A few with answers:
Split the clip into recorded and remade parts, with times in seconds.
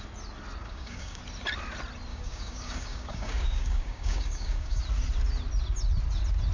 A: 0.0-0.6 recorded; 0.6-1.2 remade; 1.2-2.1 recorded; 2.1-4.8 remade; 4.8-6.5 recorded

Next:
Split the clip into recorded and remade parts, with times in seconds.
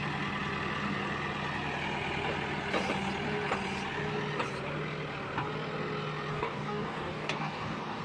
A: 0.0-6.3 recorded; 6.3-8.0 remade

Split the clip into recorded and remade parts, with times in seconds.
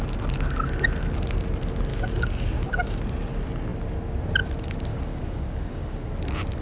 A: 0.0-1.9 recorded; 1.9-3.0 remade; 3.0-4.9 recorded; 4.9-6.1 remade; 6.1-6.6 recorded